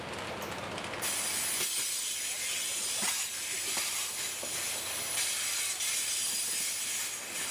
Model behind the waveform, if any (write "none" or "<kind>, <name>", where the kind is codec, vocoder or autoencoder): none